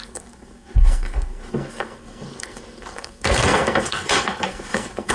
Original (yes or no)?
no